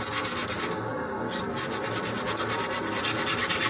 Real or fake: real